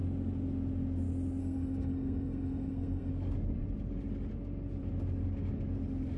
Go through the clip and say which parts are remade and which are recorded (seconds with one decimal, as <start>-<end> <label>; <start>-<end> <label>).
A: 0.0-1.4 recorded; 1.4-3.1 remade; 3.1-6.2 recorded